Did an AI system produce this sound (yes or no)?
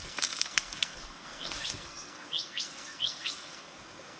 yes